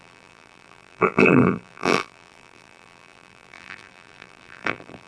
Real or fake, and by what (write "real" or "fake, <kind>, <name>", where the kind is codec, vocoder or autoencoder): fake, vocoder, BigVGAN v2